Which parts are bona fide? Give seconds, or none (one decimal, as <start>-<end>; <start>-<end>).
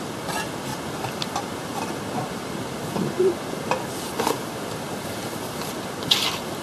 0.0-6.6